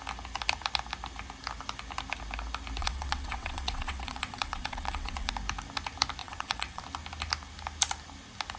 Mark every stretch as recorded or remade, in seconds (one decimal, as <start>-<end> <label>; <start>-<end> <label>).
0.0-2.8 recorded; 2.8-5.3 remade; 5.3-6.2 recorded; 6.2-6.8 remade; 6.8-8.6 recorded

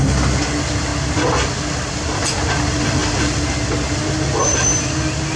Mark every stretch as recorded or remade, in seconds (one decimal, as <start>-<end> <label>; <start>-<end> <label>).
0.0-5.4 recorded

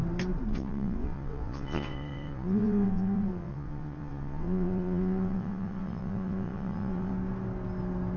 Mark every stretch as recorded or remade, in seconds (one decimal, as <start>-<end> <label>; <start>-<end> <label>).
0.0-0.5 recorded; 0.5-7.1 remade; 7.1-8.2 recorded